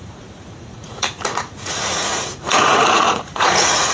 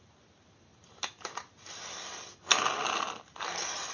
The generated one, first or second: first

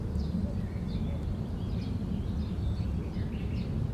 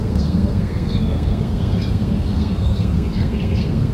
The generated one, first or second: second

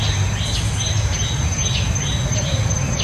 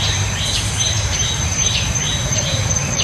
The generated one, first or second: second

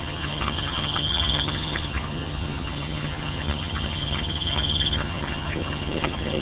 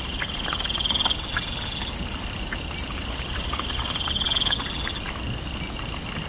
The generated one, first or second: first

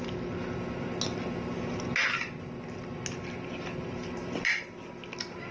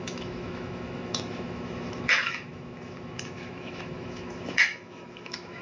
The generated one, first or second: second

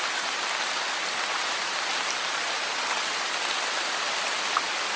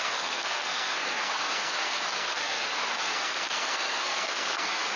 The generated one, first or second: second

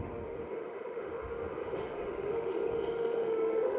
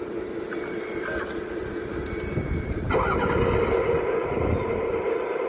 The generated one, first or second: first